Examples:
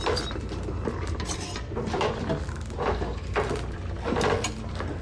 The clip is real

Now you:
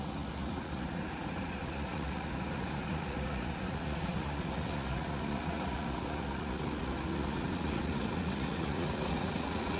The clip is fake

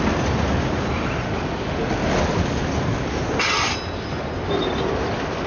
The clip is real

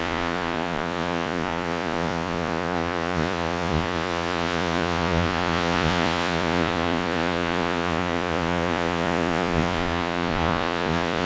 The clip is fake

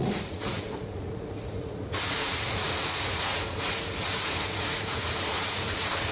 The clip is fake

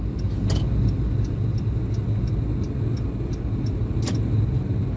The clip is real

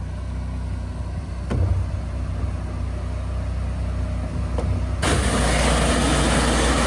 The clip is real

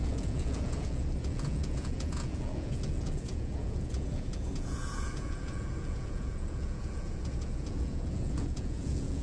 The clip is fake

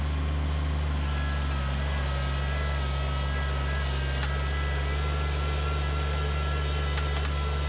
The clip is real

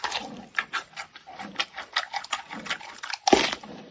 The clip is real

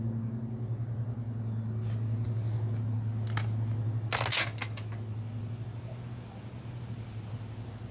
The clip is real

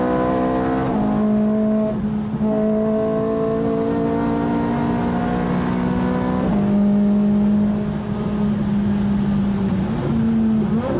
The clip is real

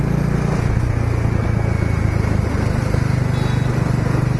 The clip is real